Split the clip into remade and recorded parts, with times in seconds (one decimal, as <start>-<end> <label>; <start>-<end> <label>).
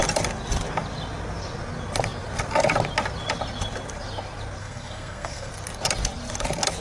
0.0-4.6 recorded; 4.6-5.5 remade; 5.5-6.8 recorded